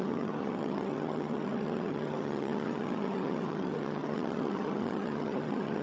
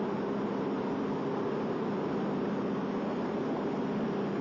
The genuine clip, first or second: second